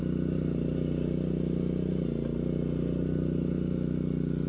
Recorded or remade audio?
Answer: recorded